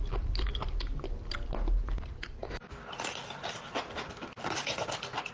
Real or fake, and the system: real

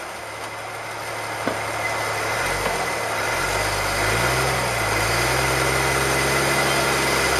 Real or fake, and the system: real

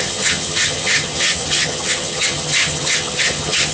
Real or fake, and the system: fake, vocoder, HiFi-GAN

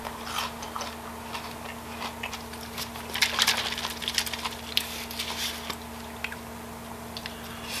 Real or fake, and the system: real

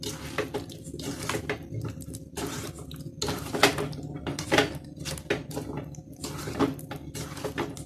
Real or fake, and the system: real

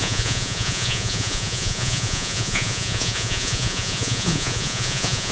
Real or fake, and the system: fake, vocoder, Vocos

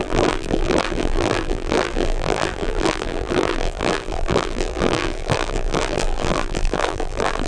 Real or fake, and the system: fake, vocoder, BigVGAN v2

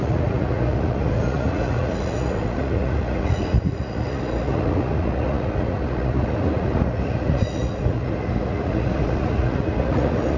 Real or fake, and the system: fake, vocoder, Vocos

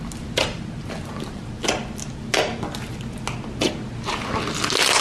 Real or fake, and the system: real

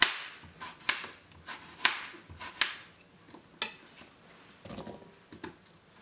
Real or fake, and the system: real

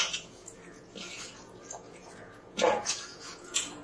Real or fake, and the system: fake, vocoder, Vocos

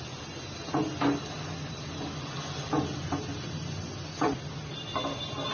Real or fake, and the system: real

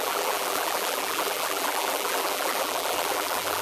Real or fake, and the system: fake, vocoder, BigVGAN v2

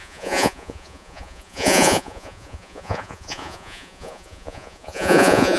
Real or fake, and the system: fake, vocoder, Vocos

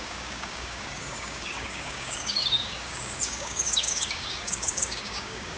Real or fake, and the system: fake, codec, DAC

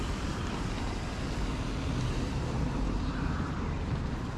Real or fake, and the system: fake, vocoder, BigVGAN v2